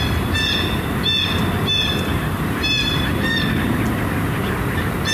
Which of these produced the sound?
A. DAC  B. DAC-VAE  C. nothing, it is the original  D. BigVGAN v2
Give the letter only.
C